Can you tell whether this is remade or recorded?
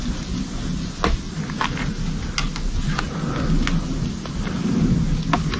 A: recorded